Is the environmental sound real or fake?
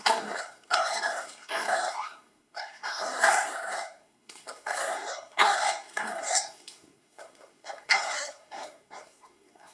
fake